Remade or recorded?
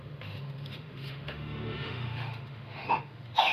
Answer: remade